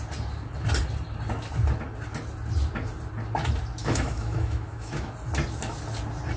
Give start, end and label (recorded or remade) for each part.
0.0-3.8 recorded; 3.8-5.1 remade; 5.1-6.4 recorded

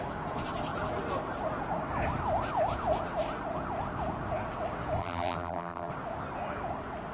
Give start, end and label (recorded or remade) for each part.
0.0-5.0 recorded; 5.0-5.9 remade; 5.9-7.1 recorded

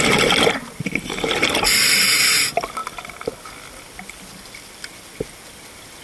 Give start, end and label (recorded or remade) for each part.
0.0-6.0 recorded

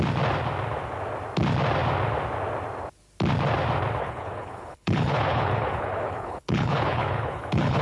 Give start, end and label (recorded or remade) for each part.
0.0-4.0 recorded; 4.0-7.8 remade

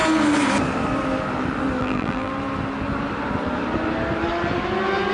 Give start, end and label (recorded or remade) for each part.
0.0-1.8 recorded; 1.8-2.3 remade; 2.3-5.1 recorded